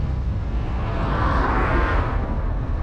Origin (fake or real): fake